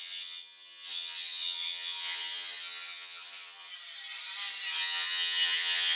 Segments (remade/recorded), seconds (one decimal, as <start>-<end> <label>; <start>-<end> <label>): 0.0-3.7 remade; 3.7-4.7 recorded; 4.7-6.0 remade

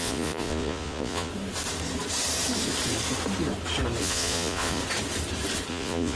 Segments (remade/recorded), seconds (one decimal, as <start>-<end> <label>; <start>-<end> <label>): 0.0-1.3 remade; 1.3-4.0 recorded; 4.0-4.8 remade; 4.8-5.7 recorded; 5.7-6.2 remade

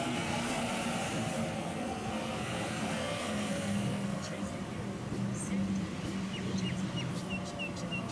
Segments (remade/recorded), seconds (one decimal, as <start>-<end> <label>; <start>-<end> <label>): 0.0-0.6 remade; 0.6-1.5 recorded; 1.5-4.4 remade; 4.4-8.1 recorded

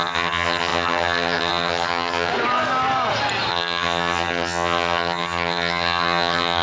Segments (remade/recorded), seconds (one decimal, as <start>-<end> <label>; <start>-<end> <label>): 0.0-2.3 remade; 2.3-3.5 recorded; 3.5-6.6 remade

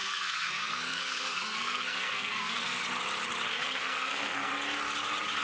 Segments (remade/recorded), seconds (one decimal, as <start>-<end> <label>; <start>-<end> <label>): 0.0-2.8 remade; 2.8-3.5 recorded; 3.5-4.5 remade; 4.5-5.4 recorded

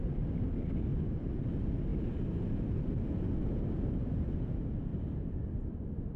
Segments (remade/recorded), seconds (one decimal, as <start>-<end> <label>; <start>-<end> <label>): 0.0-0.9 recorded; 0.9-1.4 remade; 1.4-4.9 recorded; 4.9-5.6 remade; 5.6-6.2 recorded